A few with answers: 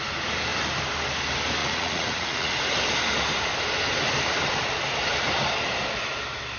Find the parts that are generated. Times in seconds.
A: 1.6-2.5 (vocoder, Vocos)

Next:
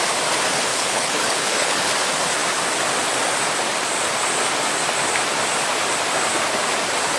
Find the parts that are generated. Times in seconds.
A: 0.7-1.8 (codec, HILCodec)

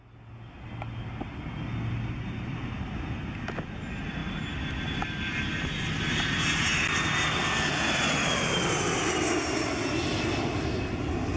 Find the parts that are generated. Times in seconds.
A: none

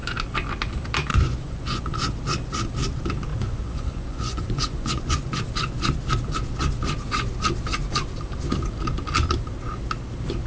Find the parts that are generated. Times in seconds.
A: 1.1-1.8 (vocoder, Vocos); 3.3-5.4

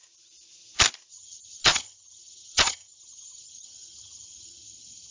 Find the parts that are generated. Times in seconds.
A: 1.1-5.1 (vocoder, HiFi-GAN)

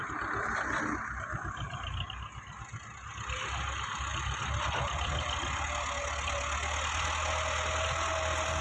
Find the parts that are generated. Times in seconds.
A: none